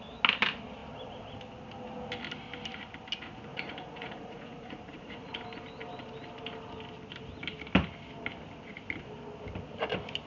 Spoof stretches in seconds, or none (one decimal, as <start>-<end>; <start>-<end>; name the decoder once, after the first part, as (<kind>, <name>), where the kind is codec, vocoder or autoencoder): 3.5-5.3 (vocoder, Vocos)